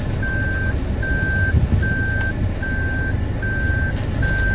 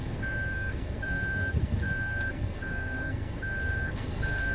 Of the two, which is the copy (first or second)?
second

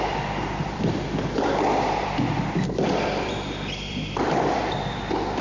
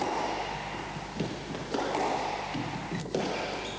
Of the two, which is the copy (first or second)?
first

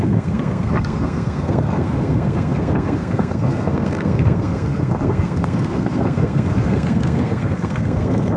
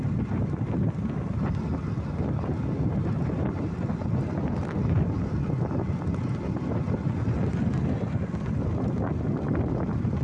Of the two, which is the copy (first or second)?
first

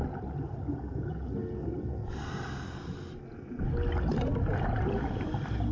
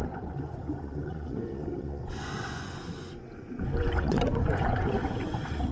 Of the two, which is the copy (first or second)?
second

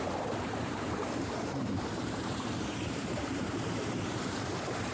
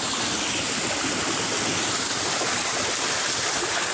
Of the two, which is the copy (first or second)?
first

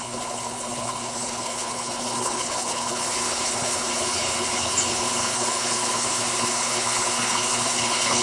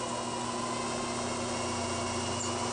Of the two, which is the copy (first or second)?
first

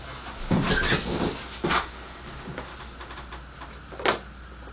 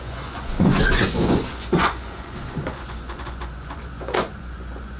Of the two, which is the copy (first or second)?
second